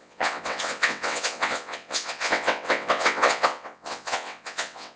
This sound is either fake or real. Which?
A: fake